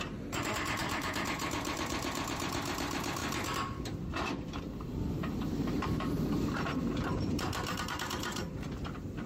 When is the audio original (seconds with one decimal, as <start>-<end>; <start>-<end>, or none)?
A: 3.2-4.4